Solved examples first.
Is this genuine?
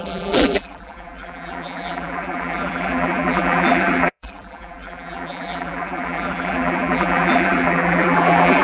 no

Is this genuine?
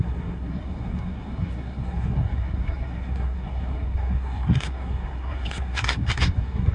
no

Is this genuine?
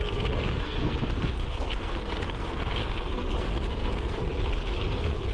no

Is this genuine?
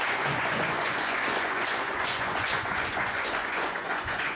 no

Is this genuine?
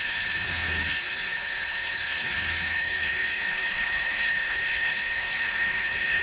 no